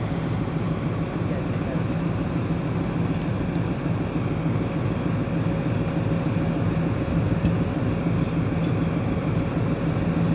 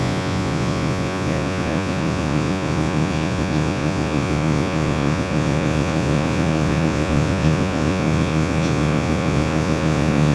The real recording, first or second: first